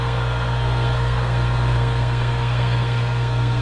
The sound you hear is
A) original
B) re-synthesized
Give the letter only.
B